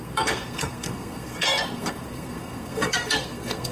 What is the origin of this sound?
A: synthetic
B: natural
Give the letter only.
A